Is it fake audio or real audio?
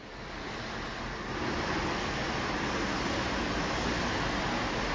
real